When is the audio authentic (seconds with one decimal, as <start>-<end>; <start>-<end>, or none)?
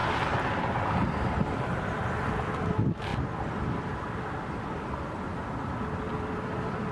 0.0-6.9